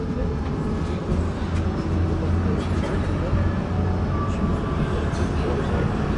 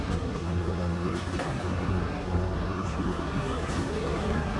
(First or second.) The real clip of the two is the first